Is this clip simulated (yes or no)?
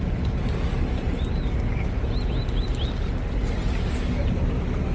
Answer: no